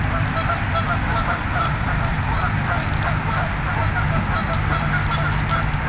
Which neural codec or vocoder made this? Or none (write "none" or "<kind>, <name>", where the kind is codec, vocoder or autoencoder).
none